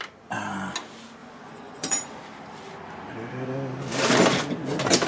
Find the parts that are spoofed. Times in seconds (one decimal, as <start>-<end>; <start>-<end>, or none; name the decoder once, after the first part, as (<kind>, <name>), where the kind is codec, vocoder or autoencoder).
1.2-2.2 (vocoder, Vocos)

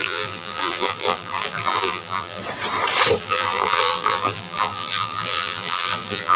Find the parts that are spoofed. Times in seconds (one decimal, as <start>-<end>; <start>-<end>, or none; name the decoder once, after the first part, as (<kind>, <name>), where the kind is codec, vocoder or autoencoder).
0.0-2.4 (vocoder, BigVGAN v2); 3.2-6.4